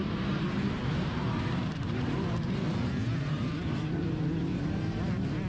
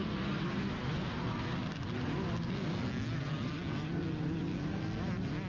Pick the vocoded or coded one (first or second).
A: first